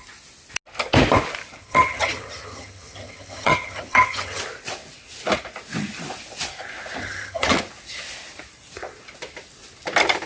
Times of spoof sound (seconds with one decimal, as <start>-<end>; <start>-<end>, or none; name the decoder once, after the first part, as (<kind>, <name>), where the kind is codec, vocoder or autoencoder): 1.6-4.4 (vocoder, HiFi-GAN); 7.0-7.6